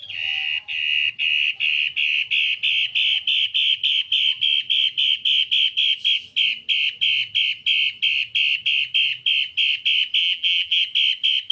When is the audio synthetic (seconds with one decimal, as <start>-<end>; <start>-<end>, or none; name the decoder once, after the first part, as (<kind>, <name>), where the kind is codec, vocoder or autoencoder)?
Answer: 10.2-10.8 (vocoder, BigVGAN v2)